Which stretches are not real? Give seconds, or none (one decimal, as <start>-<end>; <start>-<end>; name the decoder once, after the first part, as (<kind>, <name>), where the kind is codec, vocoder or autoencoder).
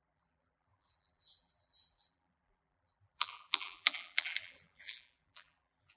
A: 0.0-6.0 (vocoder, BigVGAN v2)